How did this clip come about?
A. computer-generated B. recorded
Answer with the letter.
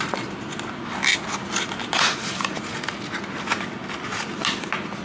B